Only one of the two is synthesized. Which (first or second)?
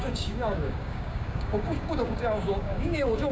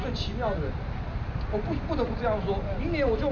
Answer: first